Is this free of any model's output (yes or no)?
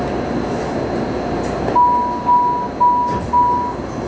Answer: yes